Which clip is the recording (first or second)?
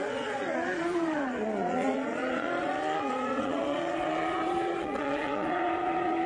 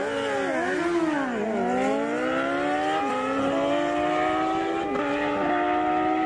second